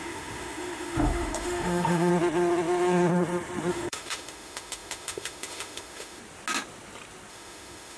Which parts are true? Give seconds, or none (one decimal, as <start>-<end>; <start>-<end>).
2.1-3.7; 6.2-7.3